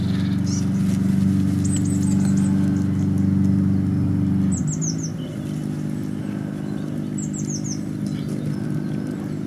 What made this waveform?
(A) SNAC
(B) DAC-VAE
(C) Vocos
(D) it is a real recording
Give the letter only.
D